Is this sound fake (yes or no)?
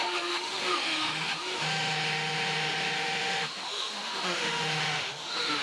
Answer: yes